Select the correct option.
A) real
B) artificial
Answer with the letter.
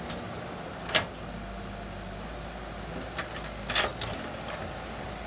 A